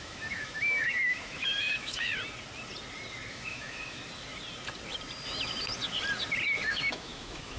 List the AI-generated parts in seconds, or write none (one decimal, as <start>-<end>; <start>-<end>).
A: 0.0-2.1; 3.3-4.0; 6.7-7.6